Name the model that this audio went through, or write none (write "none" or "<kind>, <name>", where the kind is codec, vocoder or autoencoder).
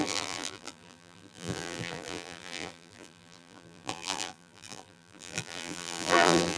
vocoder, BigVGAN v2